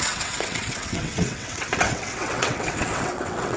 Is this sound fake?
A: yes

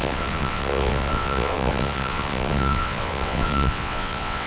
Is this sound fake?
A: yes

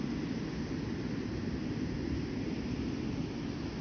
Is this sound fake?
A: no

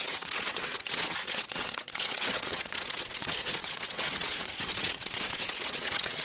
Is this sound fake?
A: yes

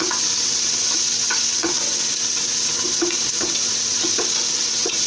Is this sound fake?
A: yes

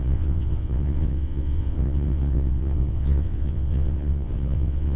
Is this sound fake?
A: yes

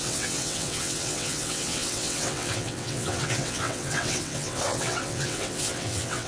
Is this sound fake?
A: yes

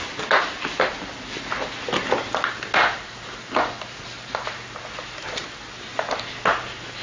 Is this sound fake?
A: no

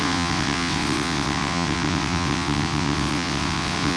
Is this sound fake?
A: yes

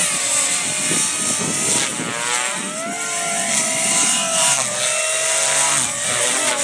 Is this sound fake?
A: no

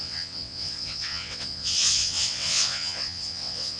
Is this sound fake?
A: yes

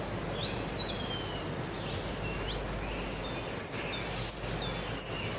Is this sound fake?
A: no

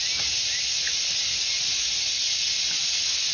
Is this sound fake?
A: no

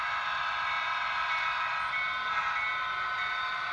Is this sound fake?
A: no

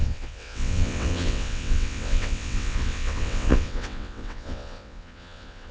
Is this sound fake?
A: yes